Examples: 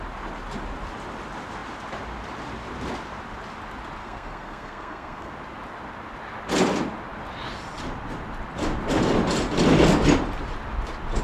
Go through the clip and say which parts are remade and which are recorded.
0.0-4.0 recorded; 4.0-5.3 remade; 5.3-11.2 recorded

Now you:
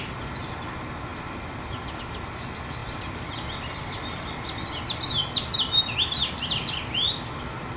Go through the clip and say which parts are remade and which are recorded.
0.0-1.1 recorded; 1.1-2.0 remade; 2.0-2.8 recorded; 2.8-7.8 remade

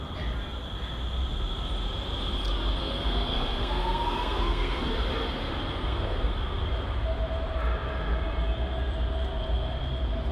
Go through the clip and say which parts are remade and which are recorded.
0.0-2.8 recorded; 2.8-4.8 remade; 4.8-5.8 recorded; 5.8-6.6 remade; 6.6-10.3 recorded